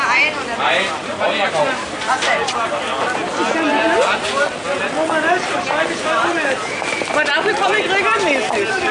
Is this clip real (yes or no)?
yes